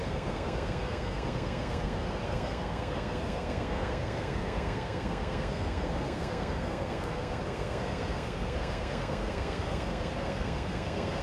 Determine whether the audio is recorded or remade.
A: remade